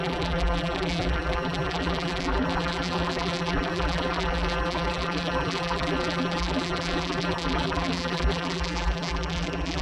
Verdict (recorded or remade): remade